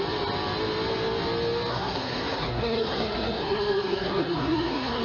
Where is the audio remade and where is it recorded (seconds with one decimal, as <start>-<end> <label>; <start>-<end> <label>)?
0.0-1.7 recorded; 1.7-5.0 remade

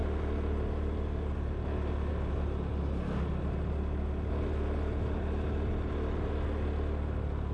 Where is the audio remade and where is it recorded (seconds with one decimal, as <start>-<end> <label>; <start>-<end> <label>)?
0.0-7.5 recorded